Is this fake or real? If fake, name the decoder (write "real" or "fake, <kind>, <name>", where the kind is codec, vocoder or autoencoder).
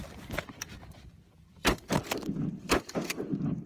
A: fake, vocoder, BigVGAN v2